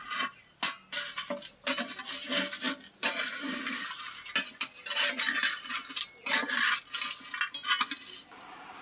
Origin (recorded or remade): recorded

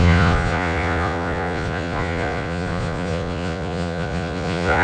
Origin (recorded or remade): remade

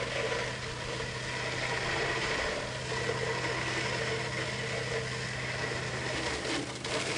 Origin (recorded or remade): recorded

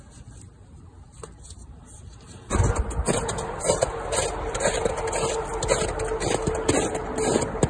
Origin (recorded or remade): recorded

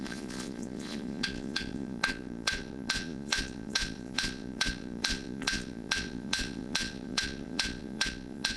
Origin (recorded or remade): remade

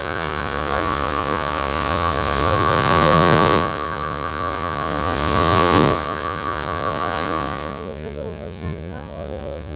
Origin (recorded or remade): remade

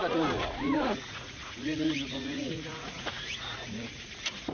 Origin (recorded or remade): remade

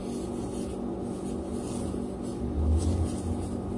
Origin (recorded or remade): recorded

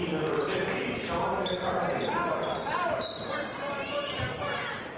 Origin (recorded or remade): recorded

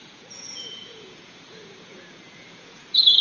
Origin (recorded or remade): remade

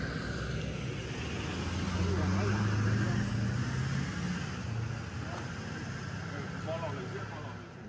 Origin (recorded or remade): recorded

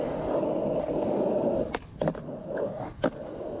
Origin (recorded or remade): recorded